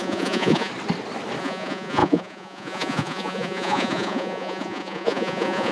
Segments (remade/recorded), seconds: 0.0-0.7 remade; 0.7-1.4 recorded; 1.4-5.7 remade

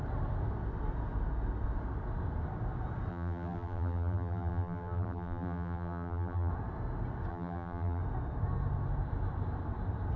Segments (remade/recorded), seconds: 0.0-3.1 recorded; 3.1-6.5 remade; 6.5-7.3 recorded; 7.3-8.0 remade; 8.0-10.2 recorded

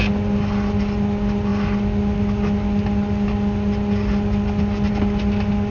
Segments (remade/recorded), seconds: 0.0-5.7 recorded

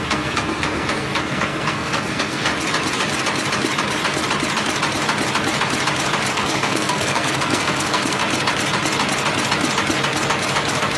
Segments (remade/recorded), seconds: 0.0-2.5 remade; 2.5-6.3 recorded; 6.3-8.2 remade; 8.2-11.0 recorded

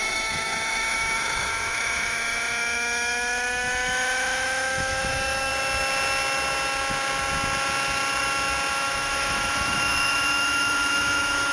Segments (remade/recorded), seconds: 0.0-5.5 remade; 5.5-8.7 recorded; 8.7-11.5 remade

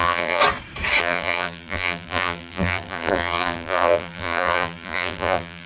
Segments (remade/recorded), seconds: 0.0-0.4 remade; 0.4-1.0 recorded; 1.0-5.7 remade

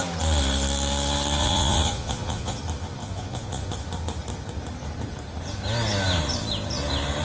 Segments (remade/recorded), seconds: 0.0-1.4 recorded; 1.4-2.6 remade; 2.6-3.0 recorded; 3.0-3.7 remade; 3.7-7.2 recorded